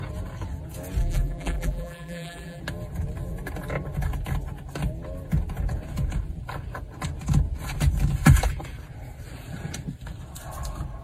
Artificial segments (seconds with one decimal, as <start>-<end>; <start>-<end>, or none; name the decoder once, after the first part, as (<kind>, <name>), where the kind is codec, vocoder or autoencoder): 1.0-2.6 (vocoder, BigVGAN v2)